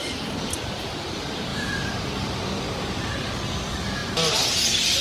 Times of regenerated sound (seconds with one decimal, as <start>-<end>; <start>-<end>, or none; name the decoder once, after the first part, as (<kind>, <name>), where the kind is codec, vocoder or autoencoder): 1.5-3.3 (vocoder, BigVGAN v2)

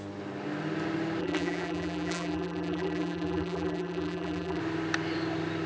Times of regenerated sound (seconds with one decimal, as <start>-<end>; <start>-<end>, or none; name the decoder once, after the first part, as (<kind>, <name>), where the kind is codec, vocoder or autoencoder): 1.2-4.6 (vocoder, BigVGAN v2)

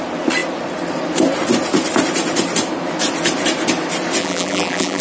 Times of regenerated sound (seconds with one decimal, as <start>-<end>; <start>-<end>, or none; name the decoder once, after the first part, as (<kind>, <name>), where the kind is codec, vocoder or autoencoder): 4.2-5.0 (vocoder, BigVGAN v2)

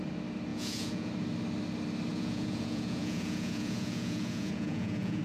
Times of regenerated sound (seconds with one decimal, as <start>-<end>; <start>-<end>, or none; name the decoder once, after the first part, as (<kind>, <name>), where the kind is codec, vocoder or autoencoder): 0.5-1.1 (vocoder, Vocos); 2.1-5.2